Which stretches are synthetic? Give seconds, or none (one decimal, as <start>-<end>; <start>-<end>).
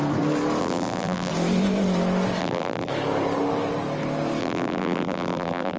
0.6-1.3; 2.4-2.9; 4.4-5.8